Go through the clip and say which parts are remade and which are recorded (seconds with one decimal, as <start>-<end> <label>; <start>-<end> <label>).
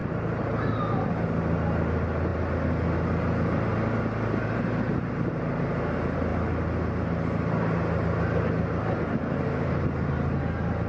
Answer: 0.0-10.9 recorded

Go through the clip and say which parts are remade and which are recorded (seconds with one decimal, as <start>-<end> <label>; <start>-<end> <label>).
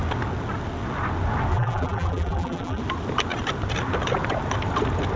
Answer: 0.0-1.5 recorded; 1.5-2.8 remade; 2.8-5.2 recorded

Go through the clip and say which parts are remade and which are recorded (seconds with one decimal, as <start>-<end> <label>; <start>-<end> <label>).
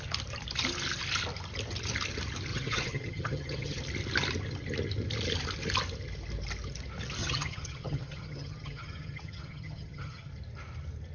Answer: 0.0-2.5 recorded; 2.5-3.8 remade; 3.8-7.2 recorded; 7.2-10.3 remade; 10.3-11.1 recorded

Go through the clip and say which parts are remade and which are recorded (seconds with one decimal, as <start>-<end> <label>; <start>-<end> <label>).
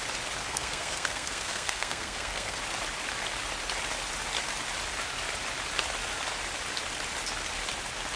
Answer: 0.0-0.4 recorded; 0.4-2.6 remade; 2.6-8.2 recorded